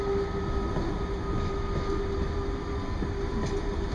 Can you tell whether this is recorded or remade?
recorded